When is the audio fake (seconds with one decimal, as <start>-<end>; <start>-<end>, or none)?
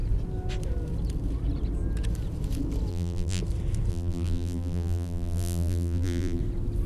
2.9-3.4; 3.9-6.4